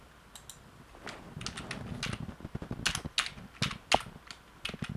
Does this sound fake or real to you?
real